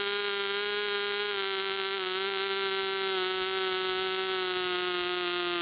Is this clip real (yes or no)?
yes